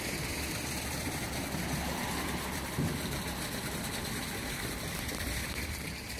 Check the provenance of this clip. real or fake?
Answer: fake